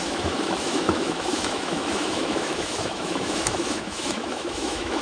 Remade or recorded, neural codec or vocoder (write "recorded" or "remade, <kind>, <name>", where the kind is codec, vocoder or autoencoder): remade, autoencoder, DAC-VAE